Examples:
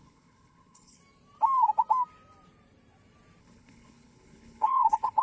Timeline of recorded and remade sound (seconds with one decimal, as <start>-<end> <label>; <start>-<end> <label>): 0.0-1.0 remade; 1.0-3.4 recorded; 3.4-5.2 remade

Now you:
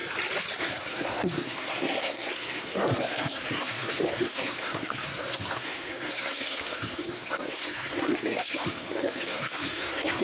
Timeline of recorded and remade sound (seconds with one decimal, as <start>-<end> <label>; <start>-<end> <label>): 0.0-0.6 recorded; 0.6-10.2 remade

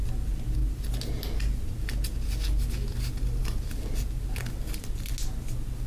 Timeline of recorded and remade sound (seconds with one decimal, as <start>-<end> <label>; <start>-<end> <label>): 0.0-5.9 recorded

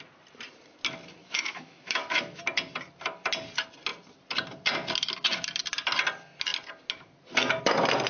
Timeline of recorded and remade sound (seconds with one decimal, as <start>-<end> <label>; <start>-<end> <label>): 0.0-1.2 recorded; 1.2-2.4 remade; 2.4-8.1 recorded

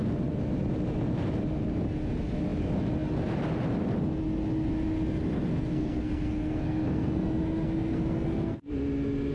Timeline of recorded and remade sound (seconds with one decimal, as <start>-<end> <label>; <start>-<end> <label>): 0.0-5.5 recorded; 5.5-8.7 remade; 8.7-9.3 recorded

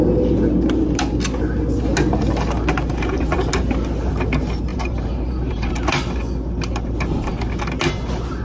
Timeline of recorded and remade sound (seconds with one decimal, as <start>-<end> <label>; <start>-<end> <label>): 0.0-4.7 recorded; 4.7-5.7 remade; 5.7-8.4 recorded